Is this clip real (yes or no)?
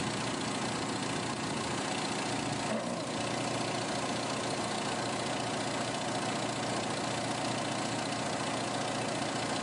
yes